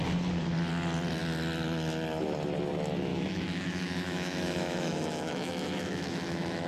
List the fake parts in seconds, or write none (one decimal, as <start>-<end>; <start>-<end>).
3.1-6.7